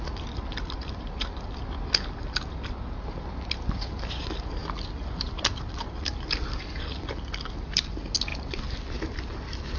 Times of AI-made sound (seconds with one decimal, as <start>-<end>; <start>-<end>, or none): none